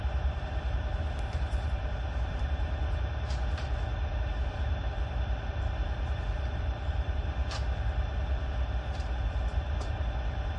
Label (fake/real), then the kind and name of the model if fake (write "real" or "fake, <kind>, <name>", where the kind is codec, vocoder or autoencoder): fake, vocoder, BigVGAN v2